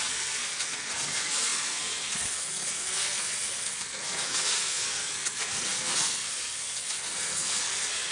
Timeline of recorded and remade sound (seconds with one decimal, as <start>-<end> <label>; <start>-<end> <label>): 0.0-8.1 remade